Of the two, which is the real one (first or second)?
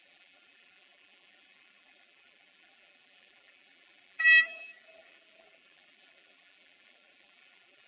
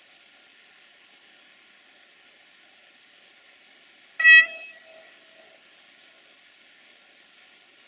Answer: second